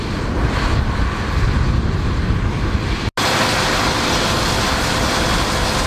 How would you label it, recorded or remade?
recorded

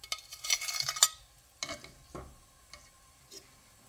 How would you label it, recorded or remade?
recorded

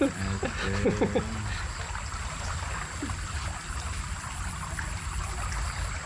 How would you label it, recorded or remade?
recorded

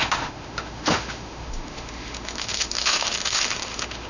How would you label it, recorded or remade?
remade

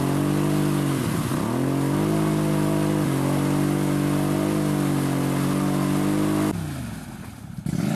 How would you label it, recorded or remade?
recorded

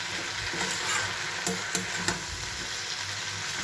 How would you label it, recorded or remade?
recorded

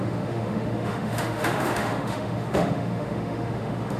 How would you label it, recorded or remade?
remade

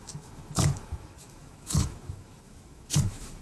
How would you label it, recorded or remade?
remade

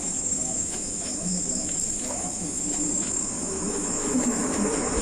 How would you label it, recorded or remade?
remade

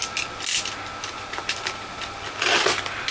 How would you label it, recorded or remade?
recorded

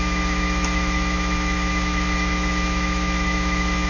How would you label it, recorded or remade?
remade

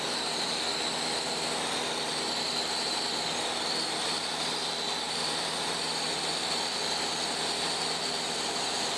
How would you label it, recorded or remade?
recorded